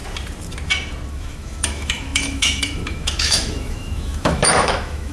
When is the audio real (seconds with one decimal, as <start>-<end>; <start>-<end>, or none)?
0.0-1.1